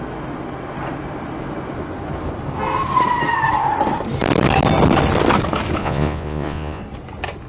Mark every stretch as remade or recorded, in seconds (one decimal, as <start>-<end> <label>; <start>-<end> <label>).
0.0-5.8 recorded; 5.8-6.8 remade; 6.8-7.5 recorded